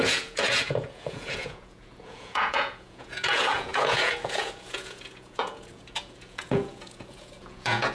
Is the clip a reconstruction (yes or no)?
yes